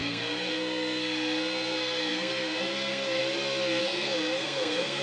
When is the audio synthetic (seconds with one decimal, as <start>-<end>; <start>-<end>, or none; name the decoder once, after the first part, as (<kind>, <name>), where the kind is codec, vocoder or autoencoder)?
0.0-3.2 (codec, SNAC); 3.8-5.0